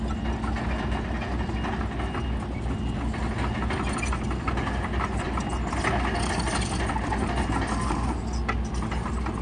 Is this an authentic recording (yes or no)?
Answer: yes